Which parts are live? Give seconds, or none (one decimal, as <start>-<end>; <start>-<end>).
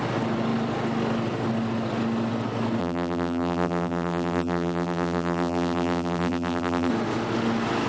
0.0-2.8; 6.9-7.9